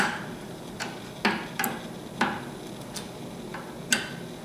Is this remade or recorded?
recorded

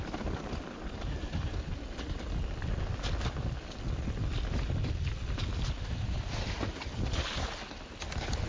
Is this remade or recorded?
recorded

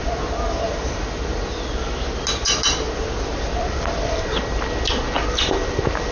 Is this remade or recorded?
recorded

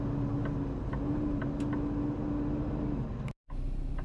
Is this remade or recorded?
recorded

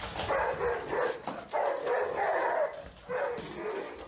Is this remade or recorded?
recorded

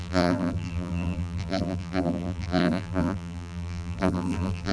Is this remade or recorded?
remade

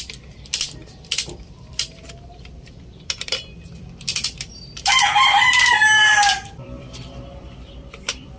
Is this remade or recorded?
remade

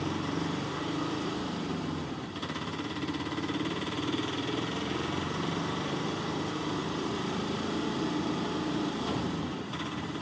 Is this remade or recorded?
remade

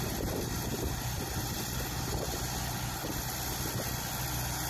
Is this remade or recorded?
recorded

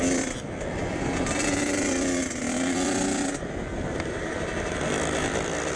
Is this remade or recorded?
remade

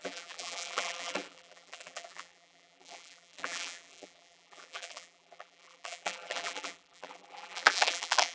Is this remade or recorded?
remade